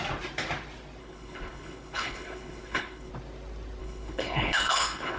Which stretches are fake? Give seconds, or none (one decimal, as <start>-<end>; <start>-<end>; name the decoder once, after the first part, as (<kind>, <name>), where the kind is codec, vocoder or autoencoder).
1.0-3.1 (codec, HILCodec); 3.8-5.2